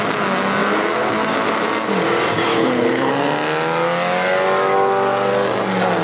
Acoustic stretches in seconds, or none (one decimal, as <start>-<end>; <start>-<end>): 0.0-2.5; 3.1-6.0